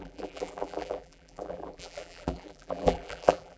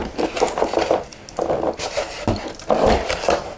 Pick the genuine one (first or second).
second